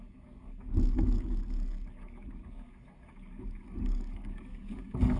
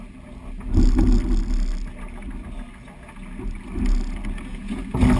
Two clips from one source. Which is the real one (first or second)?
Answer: second